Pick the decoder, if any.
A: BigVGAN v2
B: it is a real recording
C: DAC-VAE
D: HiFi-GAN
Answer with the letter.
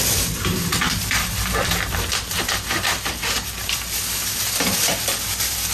A